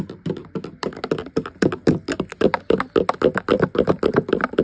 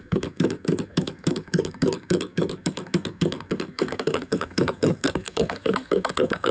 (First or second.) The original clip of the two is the first